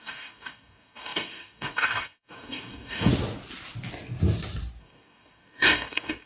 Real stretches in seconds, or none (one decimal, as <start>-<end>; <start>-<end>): 3.1-4.8